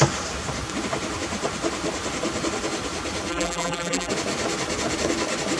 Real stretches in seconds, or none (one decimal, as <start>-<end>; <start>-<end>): 0.0-3.3; 4.1-5.6